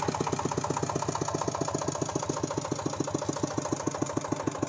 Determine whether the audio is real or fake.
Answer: real